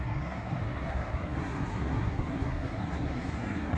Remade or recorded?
remade